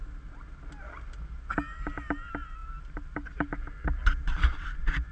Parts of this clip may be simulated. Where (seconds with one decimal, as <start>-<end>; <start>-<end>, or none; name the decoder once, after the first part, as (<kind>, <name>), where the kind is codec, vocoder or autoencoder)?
none